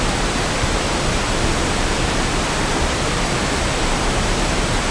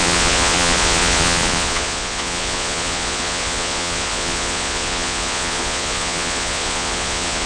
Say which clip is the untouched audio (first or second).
first